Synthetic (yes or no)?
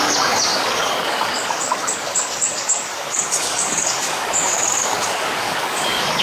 yes